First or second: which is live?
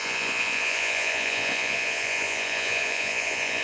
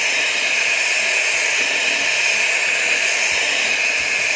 second